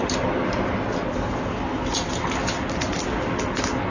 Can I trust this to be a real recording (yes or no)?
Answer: yes